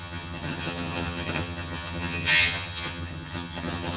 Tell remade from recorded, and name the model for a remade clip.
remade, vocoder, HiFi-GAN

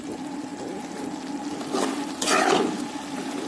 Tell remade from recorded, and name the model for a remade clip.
recorded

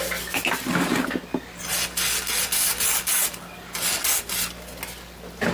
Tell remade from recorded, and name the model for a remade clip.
recorded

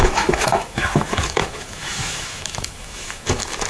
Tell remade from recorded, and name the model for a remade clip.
remade, autoencoder, DAC-VAE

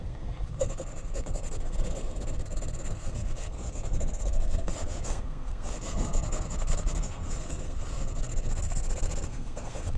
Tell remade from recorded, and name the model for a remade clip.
remade, codec, SNAC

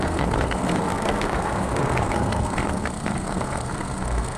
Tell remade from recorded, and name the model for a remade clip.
remade, codec, SNAC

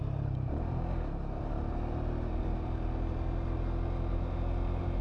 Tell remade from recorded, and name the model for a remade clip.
recorded